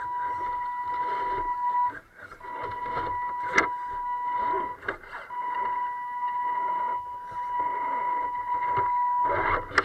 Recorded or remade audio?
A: recorded